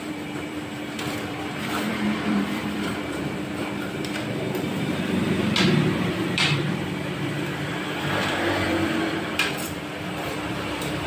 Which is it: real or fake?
fake